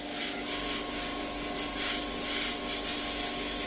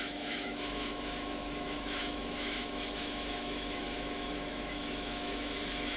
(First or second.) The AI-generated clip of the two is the second